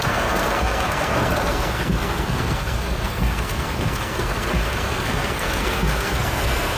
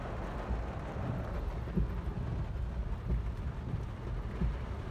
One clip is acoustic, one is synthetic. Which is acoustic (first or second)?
second